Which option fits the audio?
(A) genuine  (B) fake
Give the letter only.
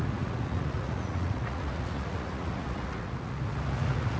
B